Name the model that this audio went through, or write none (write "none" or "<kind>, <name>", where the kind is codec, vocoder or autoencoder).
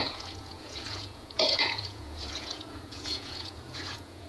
vocoder, Vocos